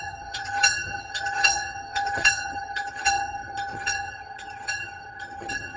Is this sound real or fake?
fake